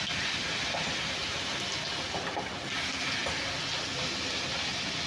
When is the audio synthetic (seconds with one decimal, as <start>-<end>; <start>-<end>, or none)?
none